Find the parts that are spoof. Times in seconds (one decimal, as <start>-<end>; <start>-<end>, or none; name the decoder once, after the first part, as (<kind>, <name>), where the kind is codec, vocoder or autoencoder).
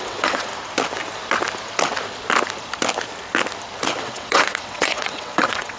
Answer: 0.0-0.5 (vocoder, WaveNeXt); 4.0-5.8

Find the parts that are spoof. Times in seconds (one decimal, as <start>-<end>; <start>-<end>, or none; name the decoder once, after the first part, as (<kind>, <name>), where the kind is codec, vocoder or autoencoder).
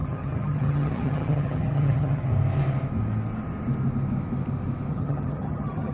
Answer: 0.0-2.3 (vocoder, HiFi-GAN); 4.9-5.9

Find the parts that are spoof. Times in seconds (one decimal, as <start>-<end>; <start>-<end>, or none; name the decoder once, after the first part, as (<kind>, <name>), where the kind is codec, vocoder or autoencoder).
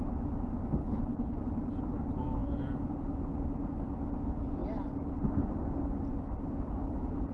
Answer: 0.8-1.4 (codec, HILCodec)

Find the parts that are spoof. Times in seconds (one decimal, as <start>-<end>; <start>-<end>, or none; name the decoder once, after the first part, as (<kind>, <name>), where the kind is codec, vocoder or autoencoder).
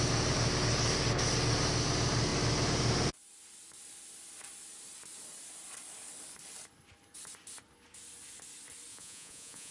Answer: 8.9-9.7 (vocoder, Vocos)